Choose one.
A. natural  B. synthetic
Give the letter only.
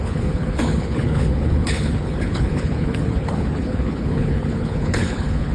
B